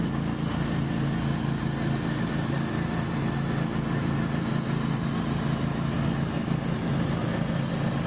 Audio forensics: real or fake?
real